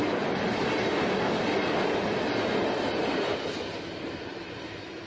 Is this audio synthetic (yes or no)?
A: no